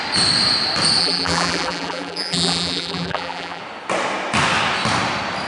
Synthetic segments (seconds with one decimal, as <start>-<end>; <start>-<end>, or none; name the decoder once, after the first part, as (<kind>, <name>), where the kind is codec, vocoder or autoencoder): 1.0-3.6 (vocoder, BigVGAN v2)